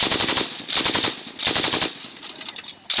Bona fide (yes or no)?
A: yes